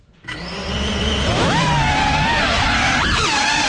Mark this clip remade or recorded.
remade